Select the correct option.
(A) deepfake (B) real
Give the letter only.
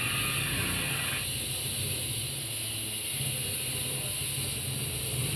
B